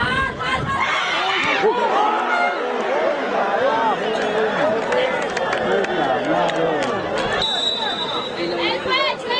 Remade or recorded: recorded